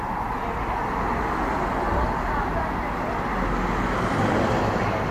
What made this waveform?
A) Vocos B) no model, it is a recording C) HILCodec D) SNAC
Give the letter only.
B